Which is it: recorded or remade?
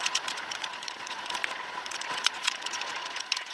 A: remade